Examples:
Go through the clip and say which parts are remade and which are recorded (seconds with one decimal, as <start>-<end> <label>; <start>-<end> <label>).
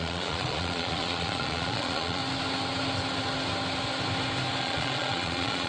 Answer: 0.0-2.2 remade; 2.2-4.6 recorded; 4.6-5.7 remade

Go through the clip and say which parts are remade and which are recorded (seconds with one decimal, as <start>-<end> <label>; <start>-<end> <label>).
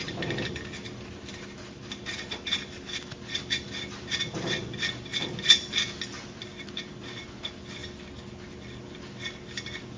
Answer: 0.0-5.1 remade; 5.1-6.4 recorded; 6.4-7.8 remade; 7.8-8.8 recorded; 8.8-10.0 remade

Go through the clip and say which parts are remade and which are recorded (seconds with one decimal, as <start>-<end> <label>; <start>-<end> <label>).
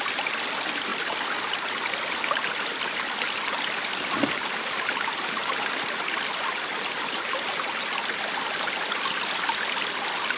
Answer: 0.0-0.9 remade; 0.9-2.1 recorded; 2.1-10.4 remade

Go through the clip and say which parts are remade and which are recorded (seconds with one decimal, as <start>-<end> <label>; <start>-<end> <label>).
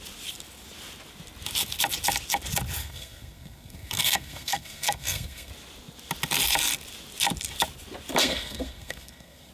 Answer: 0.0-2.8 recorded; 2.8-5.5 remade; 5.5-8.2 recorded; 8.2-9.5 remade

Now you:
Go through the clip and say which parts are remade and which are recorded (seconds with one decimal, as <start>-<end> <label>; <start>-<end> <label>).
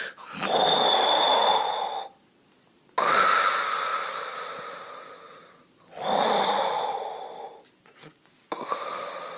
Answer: 0.0-9.4 recorded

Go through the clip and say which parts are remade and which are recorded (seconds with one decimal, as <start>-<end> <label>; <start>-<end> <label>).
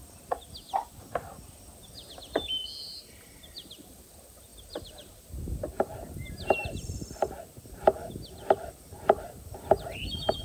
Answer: 0.0-3.5 recorded; 3.5-10.4 remade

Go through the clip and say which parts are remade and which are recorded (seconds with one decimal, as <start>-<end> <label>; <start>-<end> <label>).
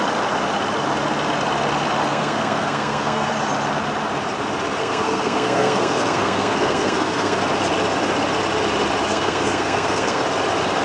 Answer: 0.0-2.1 recorded; 2.1-3.3 remade; 3.3-4.8 recorded; 4.8-7.4 remade; 7.4-9.1 recorded; 9.1-10.2 remade; 10.2-10.8 recorded